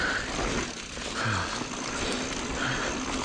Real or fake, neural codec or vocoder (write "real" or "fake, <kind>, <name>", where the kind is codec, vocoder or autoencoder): real